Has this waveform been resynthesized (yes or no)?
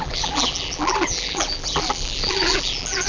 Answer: yes